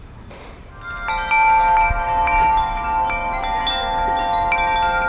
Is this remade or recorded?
recorded